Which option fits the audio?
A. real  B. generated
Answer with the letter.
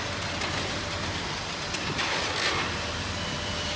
A